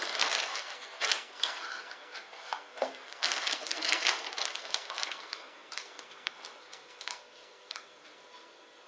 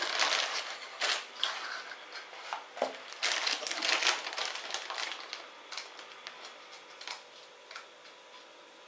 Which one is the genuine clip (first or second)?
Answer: second